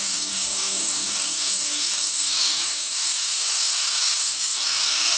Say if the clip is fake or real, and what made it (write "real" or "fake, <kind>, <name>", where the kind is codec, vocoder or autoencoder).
fake, codec, DAC